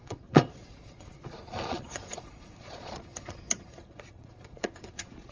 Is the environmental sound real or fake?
fake